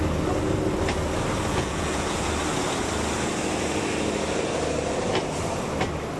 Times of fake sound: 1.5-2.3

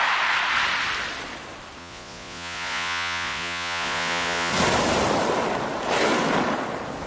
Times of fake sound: 1.8-4.5